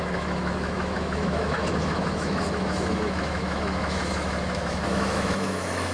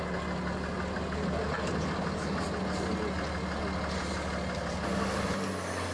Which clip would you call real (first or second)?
second